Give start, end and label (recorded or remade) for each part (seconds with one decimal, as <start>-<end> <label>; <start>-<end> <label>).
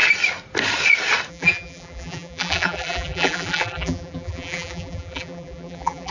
0.0-1.3 recorded; 1.3-6.1 remade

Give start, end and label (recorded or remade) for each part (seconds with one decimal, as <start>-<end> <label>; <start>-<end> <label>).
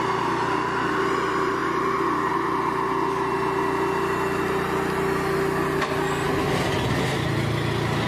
0.0-8.1 recorded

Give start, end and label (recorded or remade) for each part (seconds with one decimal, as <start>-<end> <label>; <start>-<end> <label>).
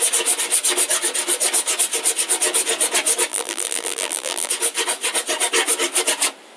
0.0-3.3 recorded; 3.3-4.5 remade; 4.5-6.6 recorded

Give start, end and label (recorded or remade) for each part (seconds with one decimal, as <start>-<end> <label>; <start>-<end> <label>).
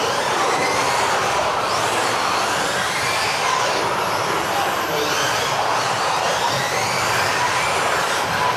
0.0-0.5 remade; 0.5-8.6 recorded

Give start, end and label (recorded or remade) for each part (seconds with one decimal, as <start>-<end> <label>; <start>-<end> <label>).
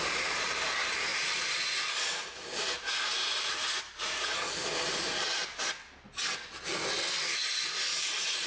0.0-5.4 remade; 5.4-7.5 recorded; 7.5-8.5 remade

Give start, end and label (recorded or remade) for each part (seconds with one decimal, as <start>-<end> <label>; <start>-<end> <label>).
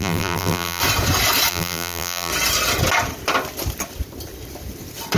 0.0-0.8 remade; 0.8-1.5 recorded; 1.5-2.3 remade; 2.3-5.2 recorded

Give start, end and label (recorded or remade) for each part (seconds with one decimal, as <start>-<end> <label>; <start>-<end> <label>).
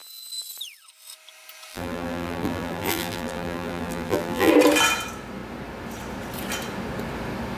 0.0-1.7 recorded; 1.7-4.5 remade; 4.5-7.6 recorded